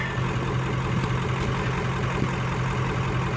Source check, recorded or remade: recorded